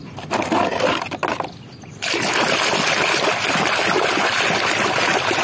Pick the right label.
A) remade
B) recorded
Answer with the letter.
B